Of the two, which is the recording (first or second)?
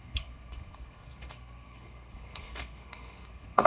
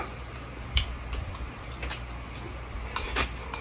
second